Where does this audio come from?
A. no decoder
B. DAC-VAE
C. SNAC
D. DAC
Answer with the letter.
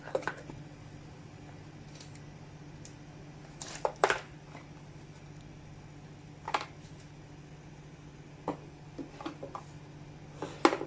A